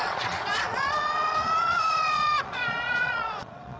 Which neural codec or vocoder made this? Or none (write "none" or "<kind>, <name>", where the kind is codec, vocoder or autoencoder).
vocoder, Vocos